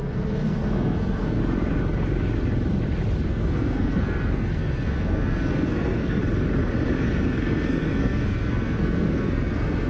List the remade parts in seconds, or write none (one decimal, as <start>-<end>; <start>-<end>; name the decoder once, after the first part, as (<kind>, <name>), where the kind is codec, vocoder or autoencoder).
0.0-1.4 (codec, SNAC); 3.3-6.2; 7.2-9.9